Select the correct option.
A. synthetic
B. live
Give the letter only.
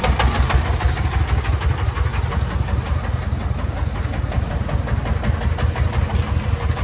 B